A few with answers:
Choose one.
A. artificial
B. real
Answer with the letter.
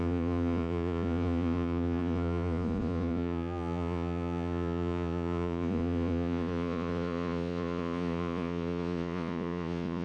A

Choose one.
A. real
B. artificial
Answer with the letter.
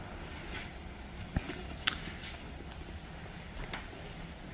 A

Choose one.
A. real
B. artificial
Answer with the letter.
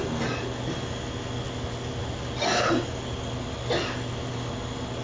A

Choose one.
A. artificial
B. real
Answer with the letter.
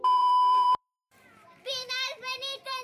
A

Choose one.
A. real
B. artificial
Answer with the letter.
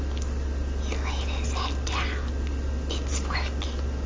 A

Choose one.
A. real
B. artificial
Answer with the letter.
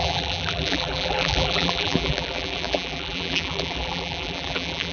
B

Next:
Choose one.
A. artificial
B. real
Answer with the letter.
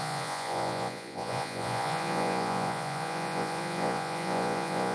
A